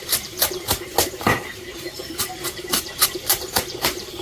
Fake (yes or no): yes